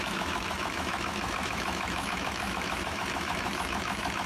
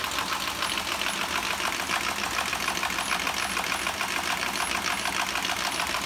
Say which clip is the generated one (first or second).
first